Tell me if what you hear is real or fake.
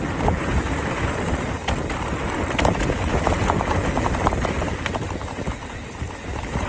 real